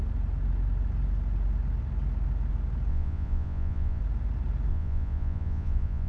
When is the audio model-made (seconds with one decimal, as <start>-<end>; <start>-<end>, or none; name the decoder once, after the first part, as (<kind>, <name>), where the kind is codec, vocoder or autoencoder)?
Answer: 2.9-4.0 (vocoder, Vocos); 4.7-6.1